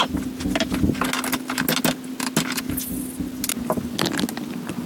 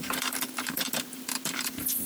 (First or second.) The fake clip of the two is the second